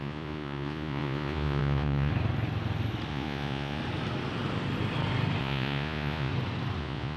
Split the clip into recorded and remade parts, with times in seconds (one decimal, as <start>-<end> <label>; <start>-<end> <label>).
0.0-2.1 remade; 2.1-3.1 recorded; 3.1-3.8 remade; 3.8-5.4 recorded; 5.4-6.3 remade; 6.3-6.8 recorded; 6.8-7.2 remade